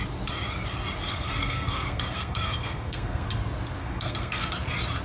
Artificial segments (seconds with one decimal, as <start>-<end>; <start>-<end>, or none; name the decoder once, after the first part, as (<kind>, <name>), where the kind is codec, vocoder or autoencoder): 1.1-3.3 (codec, SNAC); 3.8-4.5